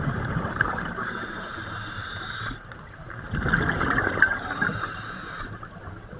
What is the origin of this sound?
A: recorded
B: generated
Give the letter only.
B